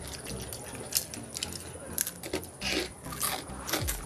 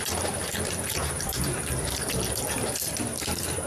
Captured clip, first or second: first